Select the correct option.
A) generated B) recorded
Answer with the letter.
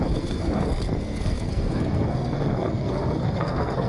A